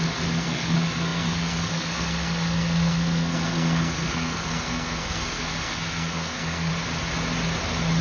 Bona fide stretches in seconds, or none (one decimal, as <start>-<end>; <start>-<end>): 6.7-8.0